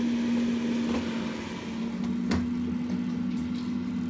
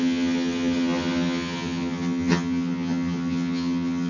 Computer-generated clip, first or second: second